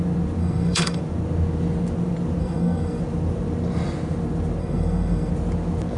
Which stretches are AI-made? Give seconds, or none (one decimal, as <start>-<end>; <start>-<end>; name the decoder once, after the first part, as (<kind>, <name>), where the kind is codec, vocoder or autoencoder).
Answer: 0.4-1.0 (codec, SNAC); 2.4-3.0; 4.6-5.3